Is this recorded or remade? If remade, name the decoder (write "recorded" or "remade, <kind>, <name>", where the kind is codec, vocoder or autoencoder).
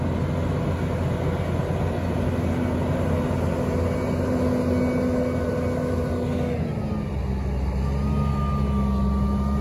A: recorded